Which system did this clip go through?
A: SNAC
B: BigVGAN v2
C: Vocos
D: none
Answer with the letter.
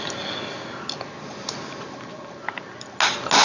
D